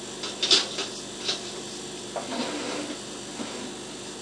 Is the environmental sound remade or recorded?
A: recorded